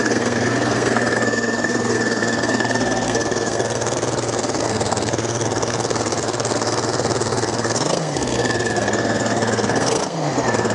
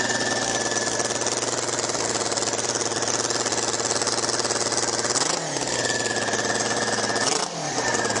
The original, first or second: second